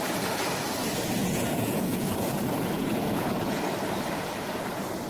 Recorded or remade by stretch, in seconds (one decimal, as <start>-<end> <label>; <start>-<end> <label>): 0.0-1.2 recorded; 1.2-3.6 remade; 3.6-5.1 recorded